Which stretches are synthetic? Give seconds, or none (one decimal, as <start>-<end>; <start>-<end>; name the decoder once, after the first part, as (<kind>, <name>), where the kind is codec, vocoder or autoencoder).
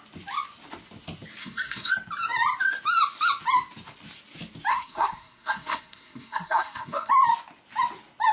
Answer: 1.4-1.9 (codec, SNAC); 4.7-7.1